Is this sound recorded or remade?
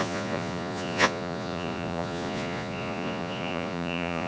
remade